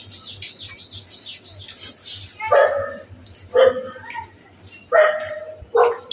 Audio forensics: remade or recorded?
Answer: recorded